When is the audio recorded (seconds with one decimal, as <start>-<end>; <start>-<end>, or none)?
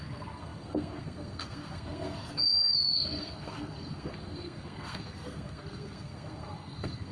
none